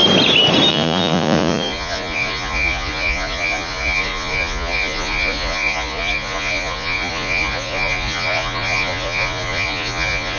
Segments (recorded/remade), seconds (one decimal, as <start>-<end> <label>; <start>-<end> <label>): 0.0-0.7 recorded; 0.7-10.4 remade